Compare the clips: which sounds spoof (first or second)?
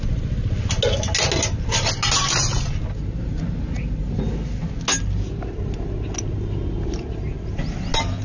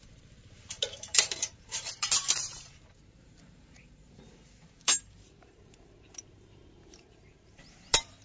second